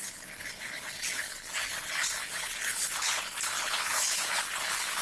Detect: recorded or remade remade